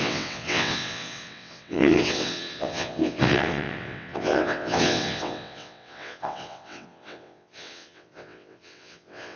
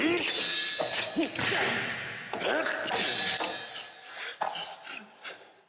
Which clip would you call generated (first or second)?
first